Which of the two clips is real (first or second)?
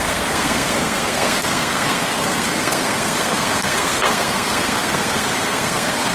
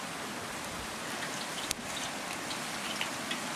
second